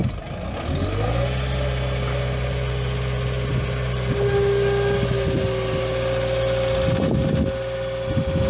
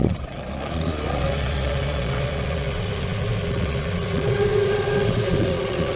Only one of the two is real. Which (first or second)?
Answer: first